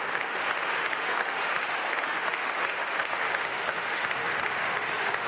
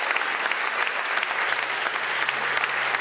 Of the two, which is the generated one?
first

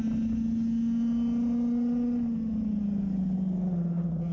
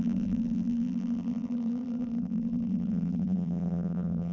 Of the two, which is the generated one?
second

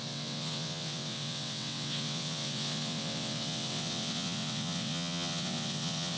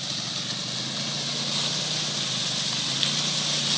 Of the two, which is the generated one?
first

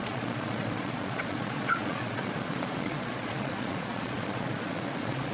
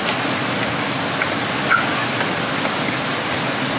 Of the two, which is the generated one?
first